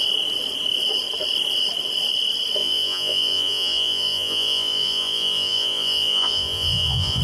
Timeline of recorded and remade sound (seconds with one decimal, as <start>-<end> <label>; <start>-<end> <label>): 0.0-2.6 recorded; 2.6-7.2 remade